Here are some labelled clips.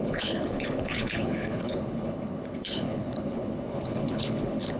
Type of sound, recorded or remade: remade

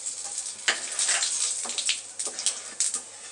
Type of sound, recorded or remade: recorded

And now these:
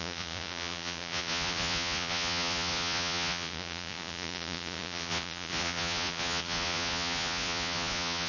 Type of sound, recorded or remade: remade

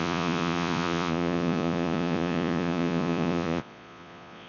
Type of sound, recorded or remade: remade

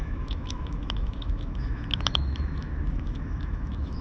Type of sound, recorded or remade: remade